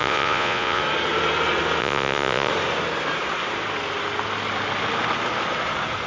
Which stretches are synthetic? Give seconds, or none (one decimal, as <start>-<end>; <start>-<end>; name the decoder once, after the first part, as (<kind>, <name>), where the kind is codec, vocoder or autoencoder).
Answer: 0.0-0.8 (vocoder, Vocos); 1.8-2.5